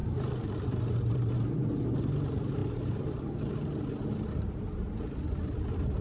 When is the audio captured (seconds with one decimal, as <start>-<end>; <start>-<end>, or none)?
0.0-0.7